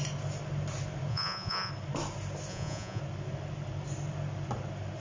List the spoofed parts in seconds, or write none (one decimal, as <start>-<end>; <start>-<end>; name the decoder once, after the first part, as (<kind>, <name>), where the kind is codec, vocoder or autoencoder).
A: 1.1-1.7 (vocoder, Vocos); 2.5-3.0